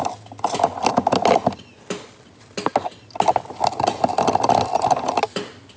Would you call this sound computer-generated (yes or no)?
no